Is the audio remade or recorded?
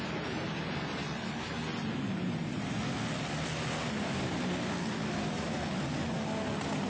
recorded